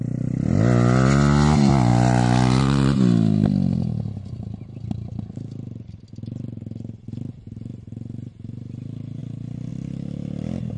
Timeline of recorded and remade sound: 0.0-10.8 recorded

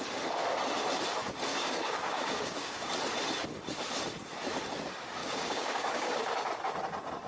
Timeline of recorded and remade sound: 0.0-1.5 recorded; 1.5-2.9 remade; 2.9-5.2 recorded; 5.2-6.2 remade; 6.2-7.3 recorded

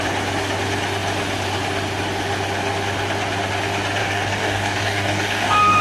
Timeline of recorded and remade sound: 0.0-4.0 recorded; 4.0-5.8 remade